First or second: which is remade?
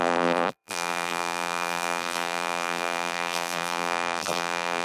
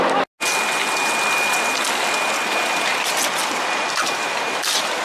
first